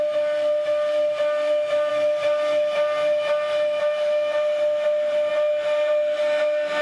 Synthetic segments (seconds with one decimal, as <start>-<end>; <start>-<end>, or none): none